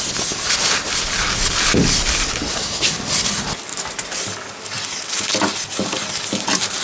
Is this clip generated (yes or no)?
no